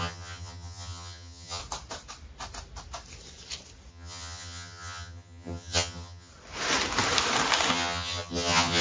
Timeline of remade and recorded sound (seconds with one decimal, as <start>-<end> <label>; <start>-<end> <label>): 0.0-1.6 remade; 1.6-3.9 recorded; 3.9-6.3 remade; 6.3-7.7 recorded; 7.7-8.8 remade